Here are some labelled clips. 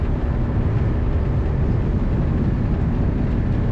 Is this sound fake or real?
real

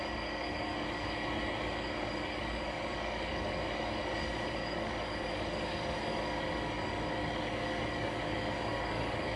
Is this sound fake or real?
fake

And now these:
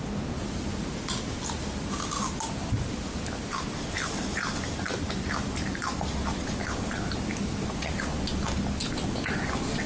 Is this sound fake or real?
real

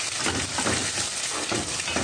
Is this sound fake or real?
real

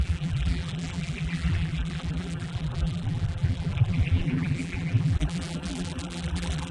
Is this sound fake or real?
fake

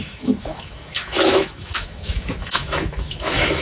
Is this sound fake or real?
fake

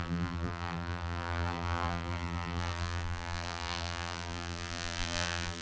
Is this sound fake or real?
fake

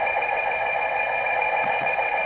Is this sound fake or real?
fake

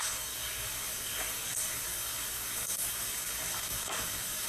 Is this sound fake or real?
fake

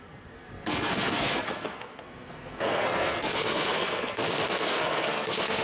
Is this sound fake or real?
fake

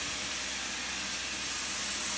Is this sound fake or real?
real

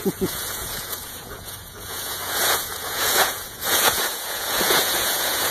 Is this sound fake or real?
fake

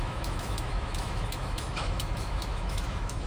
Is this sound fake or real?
fake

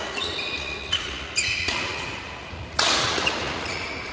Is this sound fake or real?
fake